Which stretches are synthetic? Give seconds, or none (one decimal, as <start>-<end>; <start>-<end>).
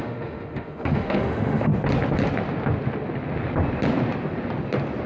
0.0-1.7